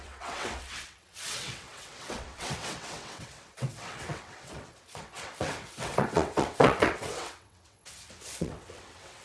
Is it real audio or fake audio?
fake